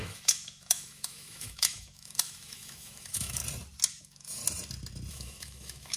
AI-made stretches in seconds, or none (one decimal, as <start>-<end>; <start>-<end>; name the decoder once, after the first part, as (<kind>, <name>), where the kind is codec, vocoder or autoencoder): 0.0-3.4 (autoencoder, DAC-VAE); 4.0-4.4; 5.1-6.0